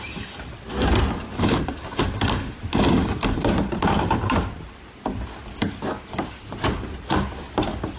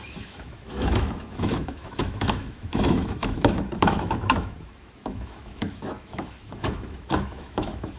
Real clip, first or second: first